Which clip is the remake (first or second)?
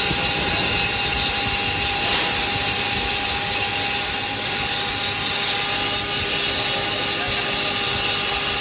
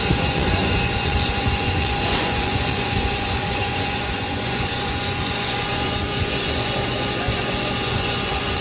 second